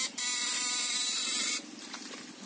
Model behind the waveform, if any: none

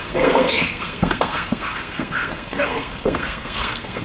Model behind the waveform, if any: codec, SNAC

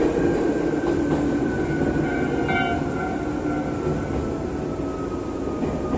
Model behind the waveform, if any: none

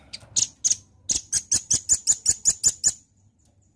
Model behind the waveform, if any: none